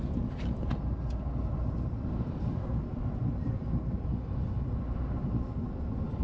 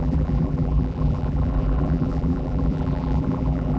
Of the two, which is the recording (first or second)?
first